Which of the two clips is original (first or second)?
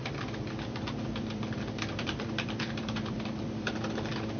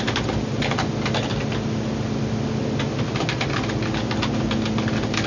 second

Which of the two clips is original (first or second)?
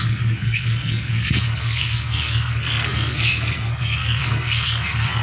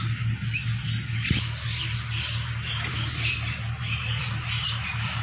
second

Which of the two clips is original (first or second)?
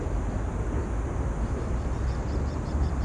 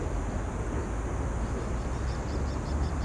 second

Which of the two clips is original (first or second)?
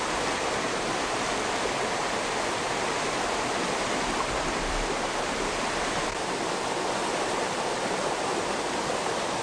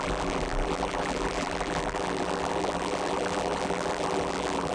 first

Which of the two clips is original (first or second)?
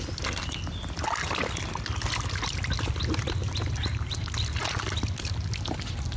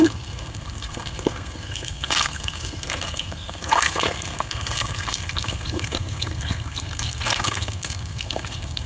first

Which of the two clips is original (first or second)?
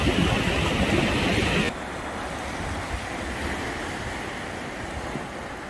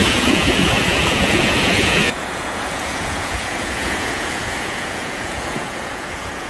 first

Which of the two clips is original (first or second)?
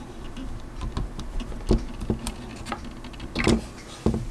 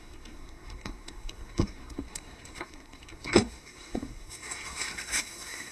first